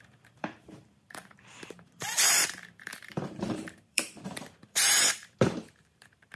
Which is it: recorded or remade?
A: remade